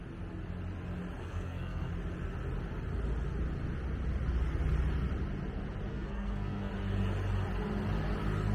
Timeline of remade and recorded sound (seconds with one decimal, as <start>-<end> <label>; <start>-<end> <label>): 0.0-1.2 recorded; 1.2-1.9 remade; 1.9-5.9 recorded; 5.9-6.7 remade; 6.7-8.5 recorded